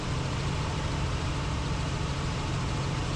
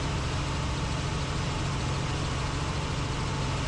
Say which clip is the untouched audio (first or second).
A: second